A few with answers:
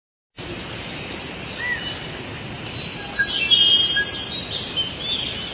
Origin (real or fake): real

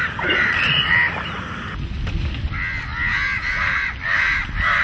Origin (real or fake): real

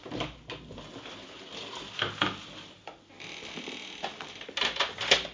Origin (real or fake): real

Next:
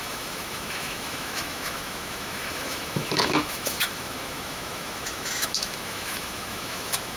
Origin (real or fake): fake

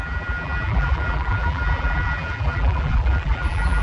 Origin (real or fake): fake